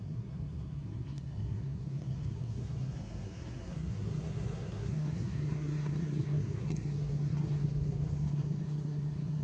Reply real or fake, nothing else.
fake